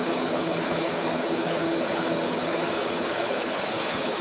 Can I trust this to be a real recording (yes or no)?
no